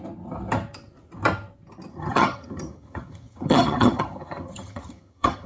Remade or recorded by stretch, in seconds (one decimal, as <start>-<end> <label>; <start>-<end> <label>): 0.0-1.9 recorded; 1.9-5.5 remade